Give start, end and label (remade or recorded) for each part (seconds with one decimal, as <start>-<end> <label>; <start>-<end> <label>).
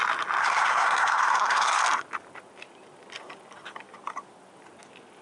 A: 0.0-0.4 recorded; 0.4-1.8 remade; 1.8-5.2 recorded